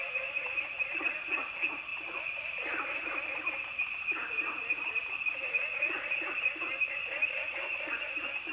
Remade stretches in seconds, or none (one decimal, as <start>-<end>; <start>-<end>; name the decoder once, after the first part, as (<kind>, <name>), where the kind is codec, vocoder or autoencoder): none